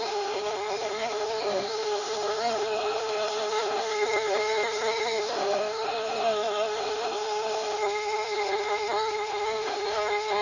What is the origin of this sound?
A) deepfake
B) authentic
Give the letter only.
A